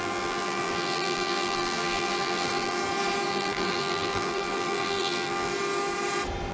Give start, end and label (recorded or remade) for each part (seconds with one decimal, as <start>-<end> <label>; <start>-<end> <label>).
0.0-2.8 remade; 2.8-3.3 recorded; 3.3-5.5 remade; 5.5-6.5 recorded